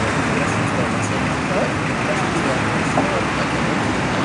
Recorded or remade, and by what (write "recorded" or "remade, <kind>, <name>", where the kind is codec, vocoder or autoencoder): recorded